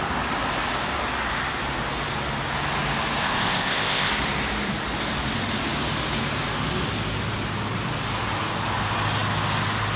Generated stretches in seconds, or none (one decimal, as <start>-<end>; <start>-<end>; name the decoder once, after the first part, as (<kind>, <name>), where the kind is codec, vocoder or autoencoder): 3.2-4.1 (codec, ZipCodec)